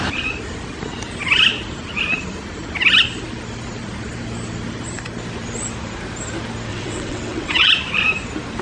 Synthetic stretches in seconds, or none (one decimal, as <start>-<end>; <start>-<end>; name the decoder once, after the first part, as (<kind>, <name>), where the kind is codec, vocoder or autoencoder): 6.7-7.7 (vocoder, WaveNeXt)